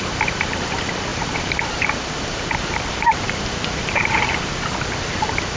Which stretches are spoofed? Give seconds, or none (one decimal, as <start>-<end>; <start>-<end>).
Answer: 1.1-4.5